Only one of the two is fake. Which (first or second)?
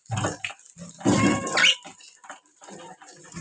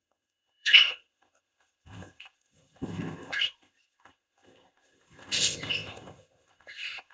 second